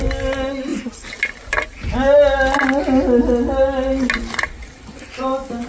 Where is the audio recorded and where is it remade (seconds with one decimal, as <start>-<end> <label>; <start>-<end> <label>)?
0.0-5.7 recorded

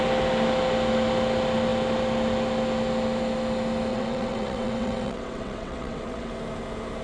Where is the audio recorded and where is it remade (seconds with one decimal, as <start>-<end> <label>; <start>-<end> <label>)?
0.0-3.9 recorded; 3.9-6.3 remade; 6.3-7.0 recorded

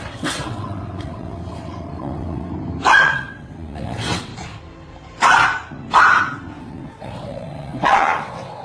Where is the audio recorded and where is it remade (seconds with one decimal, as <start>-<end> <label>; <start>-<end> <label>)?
0.0-2.5 remade; 2.5-3.0 recorded; 3.0-4.3 remade; 4.3-6.6 recorded; 6.6-8.6 remade

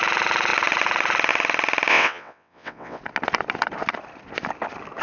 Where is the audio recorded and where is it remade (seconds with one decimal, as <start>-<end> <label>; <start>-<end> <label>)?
0.0-1.9 recorded; 1.9-3.0 remade; 3.0-5.0 recorded

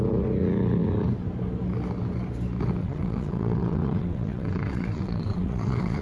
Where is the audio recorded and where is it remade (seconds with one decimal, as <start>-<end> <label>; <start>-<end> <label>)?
0.0-2.8 recorded; 2.8-6.0 remade

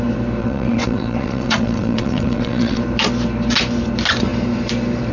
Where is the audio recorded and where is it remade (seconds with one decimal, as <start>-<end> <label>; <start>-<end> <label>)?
0.0-0.4 recorded; 0.4-2.8 remade; 2.8-5.1 recorded

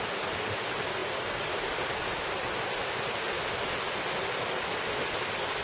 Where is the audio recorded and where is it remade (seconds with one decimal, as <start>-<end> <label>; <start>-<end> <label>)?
0.0-5.6 recorded